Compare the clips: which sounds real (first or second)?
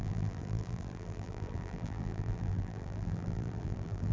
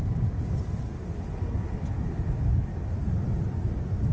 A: second